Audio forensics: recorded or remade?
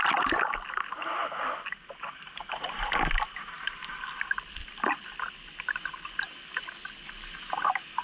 recorded